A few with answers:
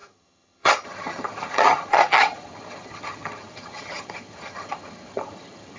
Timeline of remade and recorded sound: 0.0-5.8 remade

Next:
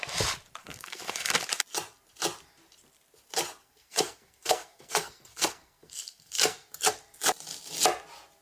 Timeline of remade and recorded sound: 0.0-0.6 recorded; 0.6-1.4 remade; 1.4-3.6 recorded; 3.6-6.9 remade; 6.9-8.4 recorded